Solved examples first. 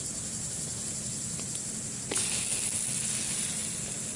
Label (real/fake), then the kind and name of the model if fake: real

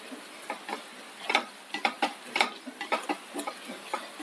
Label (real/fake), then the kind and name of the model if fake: real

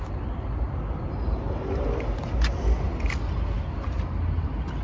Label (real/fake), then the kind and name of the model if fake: real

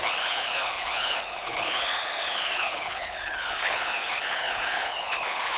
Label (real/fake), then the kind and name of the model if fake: fake, codec, HILCodec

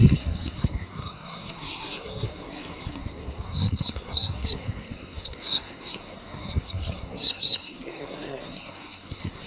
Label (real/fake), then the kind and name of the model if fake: fake, codec, SNAC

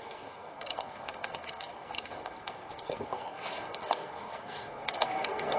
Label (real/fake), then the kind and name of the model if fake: fake, codec, SNAC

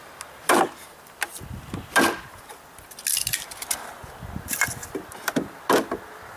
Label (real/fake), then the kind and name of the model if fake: real